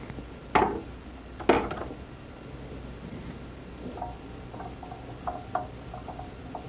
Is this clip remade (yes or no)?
no